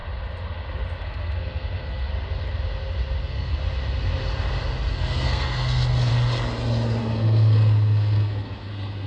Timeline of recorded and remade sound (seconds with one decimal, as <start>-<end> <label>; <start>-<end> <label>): 0.0-1.0 recorded; 1.0-2.1 remade; 2.1-3.2 recorded; 3.2-3.6 remade; 3.6-4.9 recorded; 4.9-6.1 remade; 6.1-7.0 recorded; 7.0-9.1 remade